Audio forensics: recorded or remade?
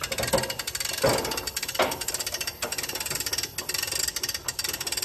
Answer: recorded